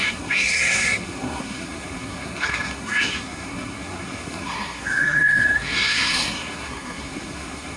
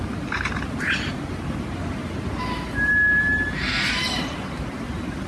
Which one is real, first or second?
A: second